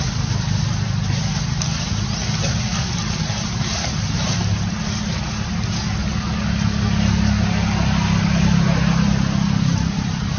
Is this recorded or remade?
recorded